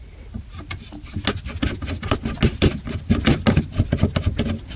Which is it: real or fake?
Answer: real